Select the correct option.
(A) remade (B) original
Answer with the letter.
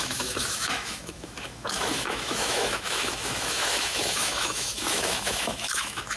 A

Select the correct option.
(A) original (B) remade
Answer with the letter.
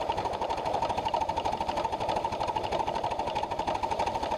A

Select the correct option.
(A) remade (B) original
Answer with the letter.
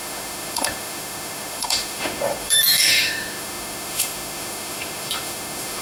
A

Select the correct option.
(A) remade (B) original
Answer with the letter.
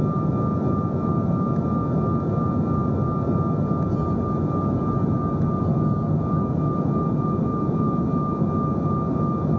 B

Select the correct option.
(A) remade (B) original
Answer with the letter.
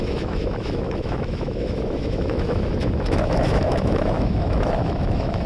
A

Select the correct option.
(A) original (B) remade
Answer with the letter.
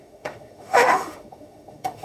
B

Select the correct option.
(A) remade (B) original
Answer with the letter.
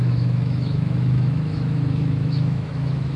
A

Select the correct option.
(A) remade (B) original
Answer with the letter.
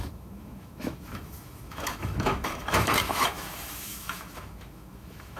A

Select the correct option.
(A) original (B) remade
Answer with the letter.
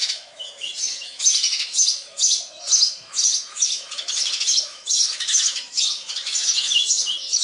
B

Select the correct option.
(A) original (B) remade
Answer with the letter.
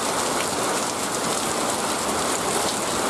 A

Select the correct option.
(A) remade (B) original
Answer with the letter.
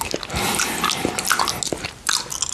B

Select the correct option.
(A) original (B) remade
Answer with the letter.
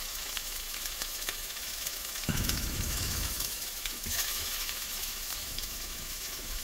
B